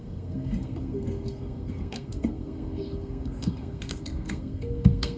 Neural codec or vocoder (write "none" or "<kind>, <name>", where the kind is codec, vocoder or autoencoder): codec, SNAC